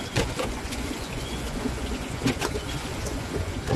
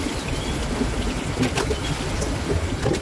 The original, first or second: second